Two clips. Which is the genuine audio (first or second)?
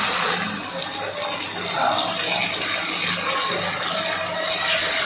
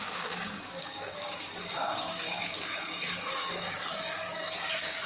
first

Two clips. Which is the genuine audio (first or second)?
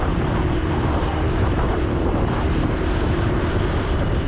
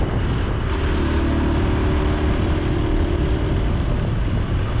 second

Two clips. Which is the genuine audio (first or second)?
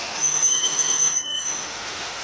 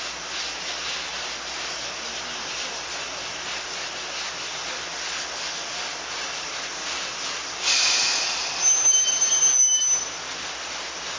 second